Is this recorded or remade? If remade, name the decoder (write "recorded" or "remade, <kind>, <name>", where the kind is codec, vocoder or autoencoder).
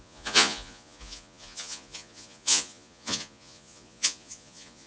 remade, vocoder, Vocos